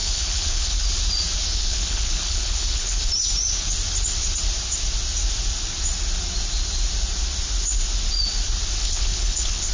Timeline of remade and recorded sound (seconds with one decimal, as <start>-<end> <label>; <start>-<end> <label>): 0.0-0.8 remade; 0.8-1.5 recorded; 1.5-3.1 remade; 3.1-8.8 recorded; 8.8-9.7 remade